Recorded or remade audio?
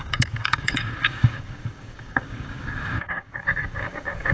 remade